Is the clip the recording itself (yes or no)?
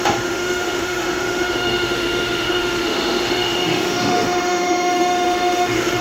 no